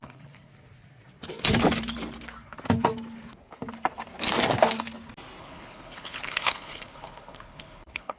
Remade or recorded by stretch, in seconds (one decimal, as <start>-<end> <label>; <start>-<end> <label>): 0.0-0.5 remade; 0.5-5.4 recorded; 5.4-8.2 remade